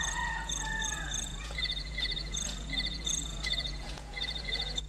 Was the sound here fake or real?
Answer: fake